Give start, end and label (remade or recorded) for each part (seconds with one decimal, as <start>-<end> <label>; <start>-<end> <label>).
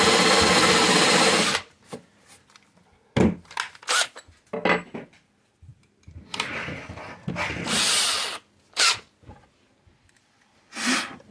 0.0-2.1 remade; 2.1-5.1 recorded; 5.1-5.7 remade; 5.7-10.0 recorded; 10.0-11.3 remade